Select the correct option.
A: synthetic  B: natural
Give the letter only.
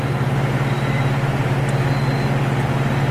B